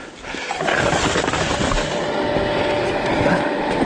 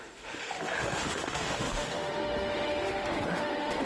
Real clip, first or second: first